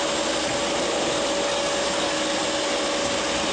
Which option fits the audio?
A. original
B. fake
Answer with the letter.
A